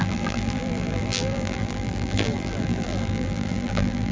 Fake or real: fake